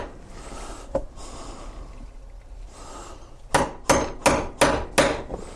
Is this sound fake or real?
real